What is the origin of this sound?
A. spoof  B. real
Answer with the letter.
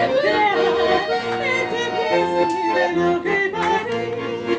B